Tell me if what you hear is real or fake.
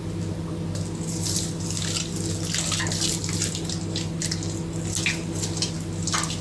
real